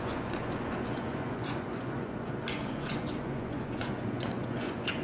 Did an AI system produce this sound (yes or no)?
yes